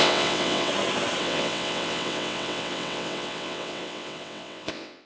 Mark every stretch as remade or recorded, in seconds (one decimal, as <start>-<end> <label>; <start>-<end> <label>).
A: 0.0-0.7 remade; 0.7-1.2 recorded; 1.2-5.1 remade